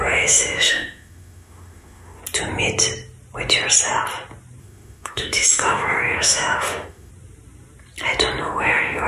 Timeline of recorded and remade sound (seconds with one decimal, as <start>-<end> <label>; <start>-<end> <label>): 0.0-2.2 remade; 2.2-4.6 recorded; 4.6-7.1 remade; 7.1-8.4 recorded; 8.4-9.1 remade